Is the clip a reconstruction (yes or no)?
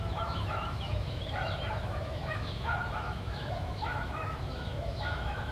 yes